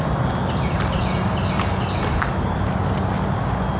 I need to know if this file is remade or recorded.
recorded